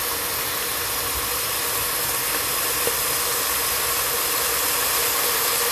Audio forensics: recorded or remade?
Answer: recorded